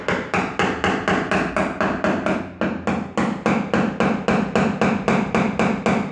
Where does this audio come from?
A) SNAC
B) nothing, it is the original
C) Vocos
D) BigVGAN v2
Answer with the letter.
B